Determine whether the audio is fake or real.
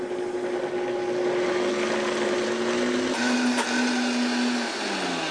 real